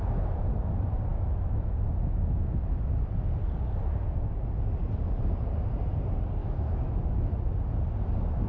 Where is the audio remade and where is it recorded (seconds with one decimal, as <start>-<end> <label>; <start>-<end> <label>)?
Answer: 0.0-1.1 recorded; 1.1-2.1 remade; 2.1-6.4 recorded; 6.4-7.0 remade; 7.0-8.5 recorded